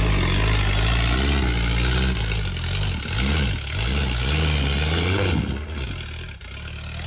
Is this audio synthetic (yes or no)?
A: no